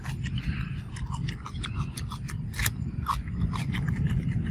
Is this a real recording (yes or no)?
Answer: yes